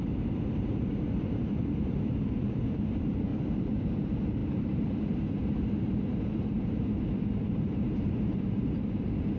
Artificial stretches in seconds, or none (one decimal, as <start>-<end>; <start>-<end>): 0.0-3.3; 3.8-9.4